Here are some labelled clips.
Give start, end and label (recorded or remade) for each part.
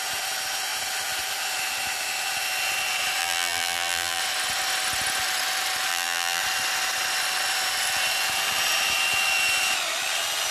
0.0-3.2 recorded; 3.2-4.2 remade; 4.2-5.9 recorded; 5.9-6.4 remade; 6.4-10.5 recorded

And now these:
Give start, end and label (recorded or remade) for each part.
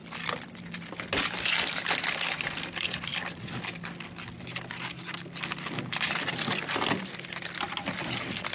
0.0-3.5 remade; 3.5-8.5 recorded